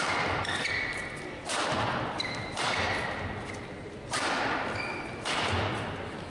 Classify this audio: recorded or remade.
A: recorded